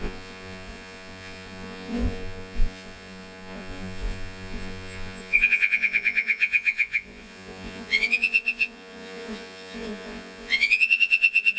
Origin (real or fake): fake